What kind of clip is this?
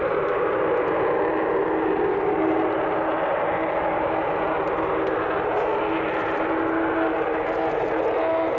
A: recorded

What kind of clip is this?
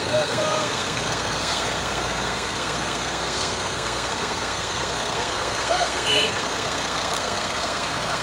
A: remade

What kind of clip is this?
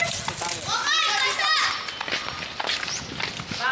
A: recorded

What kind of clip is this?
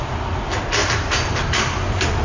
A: recorded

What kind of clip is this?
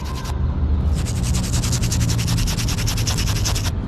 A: recorded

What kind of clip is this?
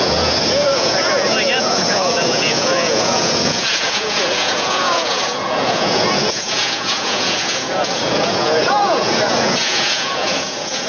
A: remade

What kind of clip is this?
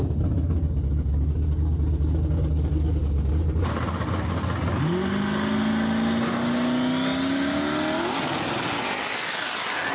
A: recorded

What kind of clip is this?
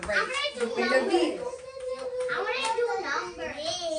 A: recorded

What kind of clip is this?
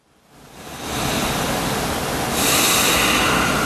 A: recorded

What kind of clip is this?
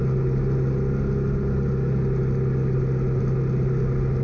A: recorded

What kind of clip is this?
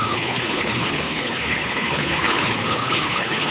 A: remade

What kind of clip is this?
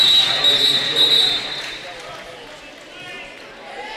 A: recorded